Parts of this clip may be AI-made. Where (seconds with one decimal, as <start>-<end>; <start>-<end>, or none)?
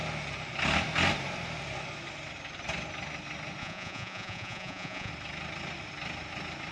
3.6-5.1